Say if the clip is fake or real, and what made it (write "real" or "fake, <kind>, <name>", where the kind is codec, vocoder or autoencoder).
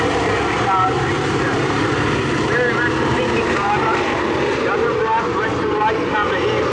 fake, vocoder, BigVGAN v2